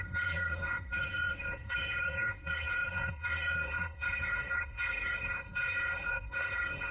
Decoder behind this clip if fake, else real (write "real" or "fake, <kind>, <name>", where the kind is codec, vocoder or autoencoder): fake, codec, SNAC